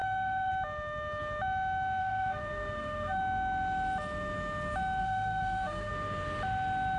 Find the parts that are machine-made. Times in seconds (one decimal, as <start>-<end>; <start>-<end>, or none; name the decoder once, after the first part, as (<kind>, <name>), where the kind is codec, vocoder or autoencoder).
0.0-0.5 (codec, SNAC); 2.0-3.2; 5.0-5.9